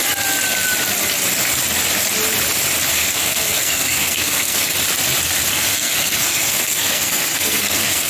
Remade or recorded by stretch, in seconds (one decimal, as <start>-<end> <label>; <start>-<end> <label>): 0.0-2.9 recorded; 2.9-4.7 remade; 4.7-5.5 recorded; 5.5-8.1 remade